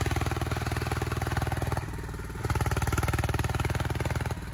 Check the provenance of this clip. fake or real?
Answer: real